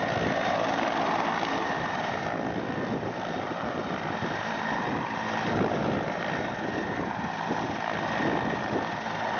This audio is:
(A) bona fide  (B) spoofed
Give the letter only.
A